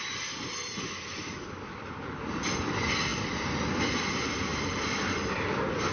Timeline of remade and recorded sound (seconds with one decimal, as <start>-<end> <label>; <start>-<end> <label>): 0.0-5.9 recorded

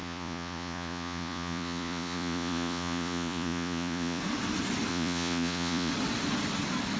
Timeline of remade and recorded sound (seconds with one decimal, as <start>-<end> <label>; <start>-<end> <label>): 0.0-4.2 remade; 4.2-4.9 recorded; 4.9-5.9 remade; 5.9-7.0 recorded